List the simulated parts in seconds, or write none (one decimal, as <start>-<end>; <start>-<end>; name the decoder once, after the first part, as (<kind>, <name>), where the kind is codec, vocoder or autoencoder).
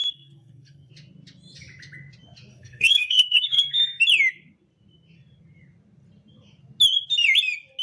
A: 0.0-0.9 (codec, SNAC); 2.5-3.8